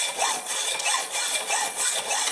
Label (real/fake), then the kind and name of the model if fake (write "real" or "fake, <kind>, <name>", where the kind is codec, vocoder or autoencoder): fake, vocoder, Vocos